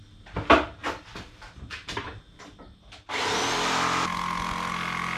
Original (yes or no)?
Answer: yes